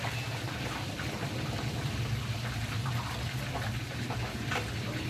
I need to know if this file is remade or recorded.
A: remade